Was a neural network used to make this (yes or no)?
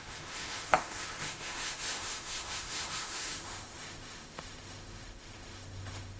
yes